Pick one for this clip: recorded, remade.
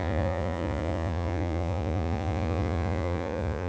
remade